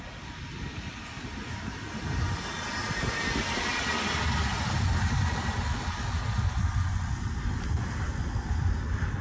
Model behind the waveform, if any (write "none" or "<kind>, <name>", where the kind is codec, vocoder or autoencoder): none